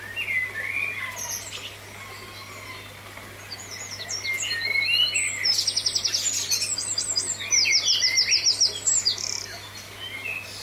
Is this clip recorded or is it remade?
recorded